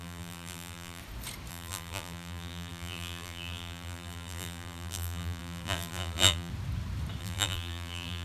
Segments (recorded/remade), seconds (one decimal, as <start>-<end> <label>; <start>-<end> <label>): 0.0-1.0 remade; 1.0-1.5 recorded; 1.5-6.5 remade; 6.5-7.2 recorded; 7.2-8.2 remade